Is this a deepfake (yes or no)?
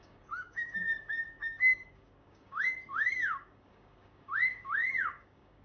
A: yes